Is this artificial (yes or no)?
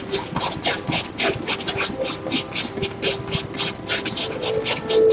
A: no